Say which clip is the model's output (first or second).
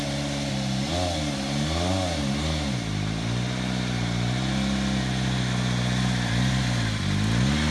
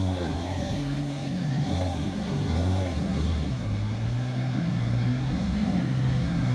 second